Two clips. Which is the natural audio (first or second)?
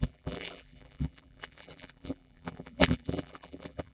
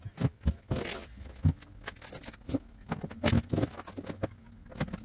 second